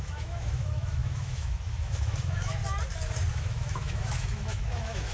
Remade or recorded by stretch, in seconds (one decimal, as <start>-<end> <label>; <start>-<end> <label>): 0.0-2.6 remade; 2.6-3.3 recorded; 3.3-5.1 remade